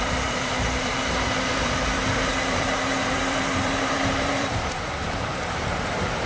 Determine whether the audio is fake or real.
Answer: fake